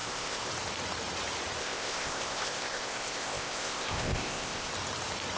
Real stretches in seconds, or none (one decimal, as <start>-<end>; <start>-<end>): 0.5-1.6; 4.7-5.4